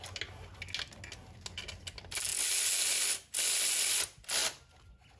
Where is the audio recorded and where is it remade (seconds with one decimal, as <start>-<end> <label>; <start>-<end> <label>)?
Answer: 0.0-5.2 recorded